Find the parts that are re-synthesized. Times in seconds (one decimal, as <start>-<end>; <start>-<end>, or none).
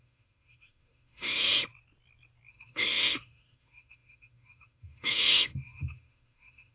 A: 0.0-1.5; 2.5-6.7